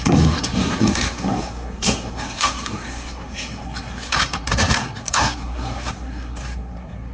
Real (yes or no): no